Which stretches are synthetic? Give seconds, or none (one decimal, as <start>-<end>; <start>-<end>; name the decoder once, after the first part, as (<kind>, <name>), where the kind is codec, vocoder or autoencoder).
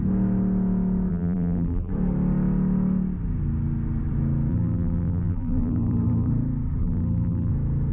1.1-1.9 (vocoder, BigVGAN v2); 4.5-6.3; 6.8-7.5